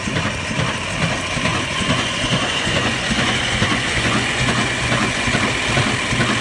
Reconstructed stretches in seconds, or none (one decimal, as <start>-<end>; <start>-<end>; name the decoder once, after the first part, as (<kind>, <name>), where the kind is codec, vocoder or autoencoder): 1.5-5.3 (vocoder, Vocos)